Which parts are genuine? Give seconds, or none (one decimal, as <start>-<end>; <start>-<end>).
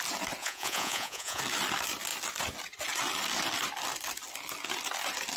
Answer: 0.0-0.4; 1.4-5.4